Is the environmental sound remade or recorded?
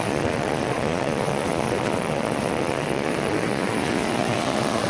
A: remade